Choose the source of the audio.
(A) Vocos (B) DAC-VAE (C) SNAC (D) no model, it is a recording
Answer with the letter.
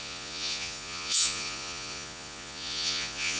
A